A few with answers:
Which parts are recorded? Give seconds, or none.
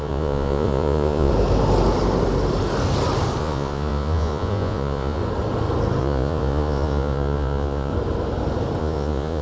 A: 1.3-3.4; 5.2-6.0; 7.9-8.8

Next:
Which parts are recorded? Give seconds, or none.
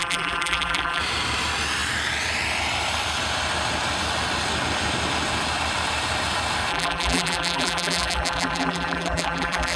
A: 1.0-6.7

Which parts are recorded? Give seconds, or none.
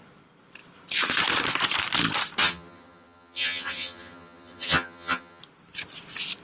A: 0.0-2.4; 5.4-6.4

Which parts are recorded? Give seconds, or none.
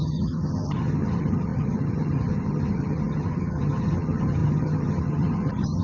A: none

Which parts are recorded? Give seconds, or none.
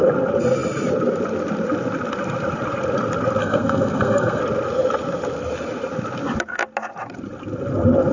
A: 0.0-3.4; 4.4-8.1